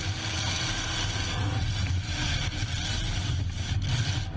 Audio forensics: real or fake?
real